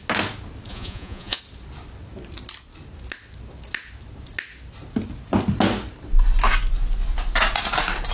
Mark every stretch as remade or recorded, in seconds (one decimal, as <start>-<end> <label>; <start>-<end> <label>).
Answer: 0.0-0.7 recorded; 0.7-1.4 remade; 1.4-8.1 recorded